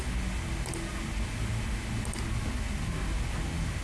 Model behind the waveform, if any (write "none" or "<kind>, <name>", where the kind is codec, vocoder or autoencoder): none